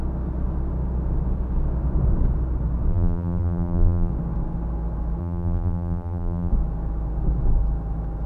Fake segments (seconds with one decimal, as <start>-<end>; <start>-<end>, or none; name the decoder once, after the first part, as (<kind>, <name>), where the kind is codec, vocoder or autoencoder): 2.9-4.1 (vocoder, BigVGAN v2); 5.2-6.5